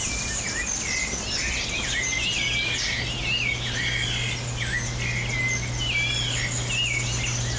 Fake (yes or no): no